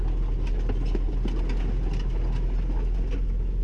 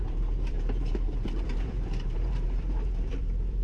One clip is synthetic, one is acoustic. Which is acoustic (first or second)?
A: first